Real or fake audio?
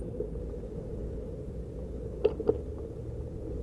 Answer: real